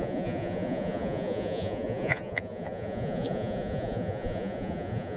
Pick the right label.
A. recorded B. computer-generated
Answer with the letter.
B